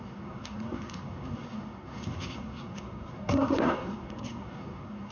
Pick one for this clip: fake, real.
fake